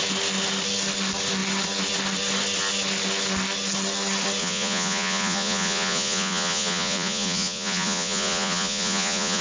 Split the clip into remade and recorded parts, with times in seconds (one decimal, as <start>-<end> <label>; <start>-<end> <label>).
0.0-4.4 recorded; 4.4-9.4 remade